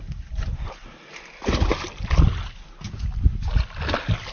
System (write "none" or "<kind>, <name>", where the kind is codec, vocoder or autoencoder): none